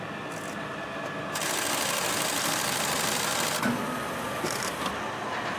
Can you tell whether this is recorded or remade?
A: recorded